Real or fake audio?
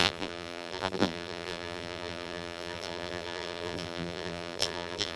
fake